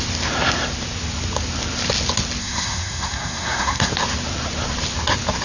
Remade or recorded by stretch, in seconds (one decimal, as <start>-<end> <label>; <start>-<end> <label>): 0.0-2.4 recorded; 2.4-3.9 remade; 3.9-5.4 recorded